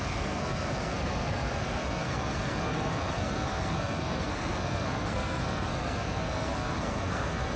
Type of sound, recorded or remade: remade